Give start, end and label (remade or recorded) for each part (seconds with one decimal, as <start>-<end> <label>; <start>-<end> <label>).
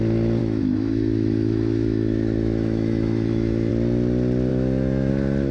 0.0-0.4 recorded; 0.4-3.7 remade; 3.7-4.5 recorded; 4.5-5.1 remade; 5.1-5.5 recorded